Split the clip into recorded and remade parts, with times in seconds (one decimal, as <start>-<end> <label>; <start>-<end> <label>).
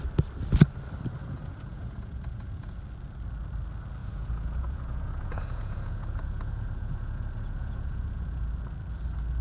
0.0-1.2 recorded; 1.2-2.8 remade; 2.8-4.0 recorded; 4.0-8.5 remade; 8.5-9.4 recorded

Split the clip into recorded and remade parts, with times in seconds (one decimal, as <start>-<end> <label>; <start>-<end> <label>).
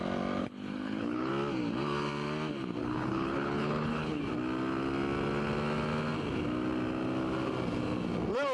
0.0-0.4 recorded; 0.4-1.3 remade; 1.3-2.8 recorded; 2.8-4.2 remade; 4.2-8.5 recorded